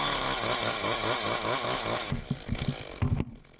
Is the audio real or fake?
real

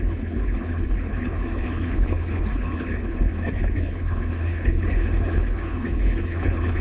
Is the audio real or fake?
fake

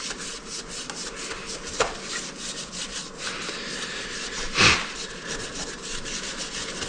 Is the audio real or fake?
real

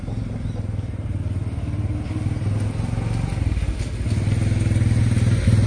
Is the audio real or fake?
real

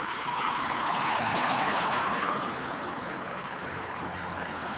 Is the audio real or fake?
fake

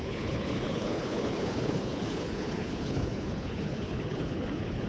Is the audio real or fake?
fake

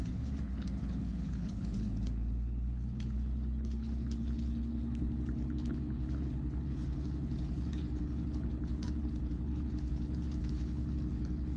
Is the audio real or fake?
fake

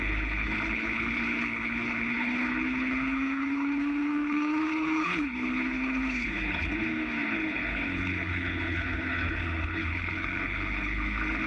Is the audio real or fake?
fake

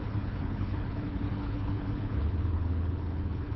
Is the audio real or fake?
fake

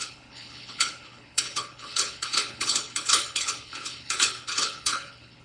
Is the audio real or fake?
fake